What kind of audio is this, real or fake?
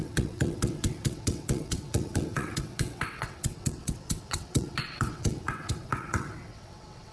fake